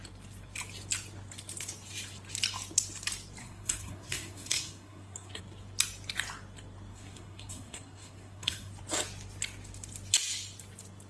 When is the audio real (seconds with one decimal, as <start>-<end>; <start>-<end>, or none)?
0.0-3.4; 5.4-6.9; 8.7-11.1